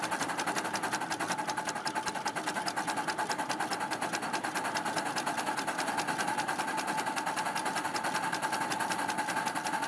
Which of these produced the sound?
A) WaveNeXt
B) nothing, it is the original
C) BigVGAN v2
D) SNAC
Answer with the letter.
B